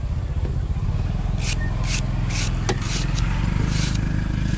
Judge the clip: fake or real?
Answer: real